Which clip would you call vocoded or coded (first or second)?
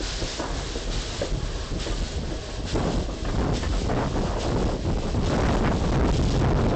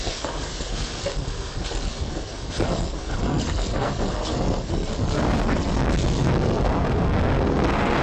second